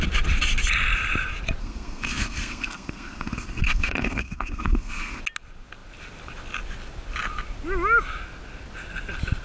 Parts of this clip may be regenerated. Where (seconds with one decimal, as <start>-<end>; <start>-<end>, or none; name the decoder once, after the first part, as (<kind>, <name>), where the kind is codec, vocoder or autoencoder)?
1.6-5.2 (codec, SNAC)